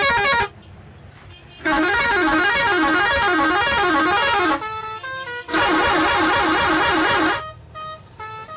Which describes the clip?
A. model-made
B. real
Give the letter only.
B